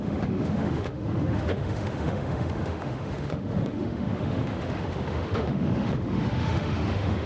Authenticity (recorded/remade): remade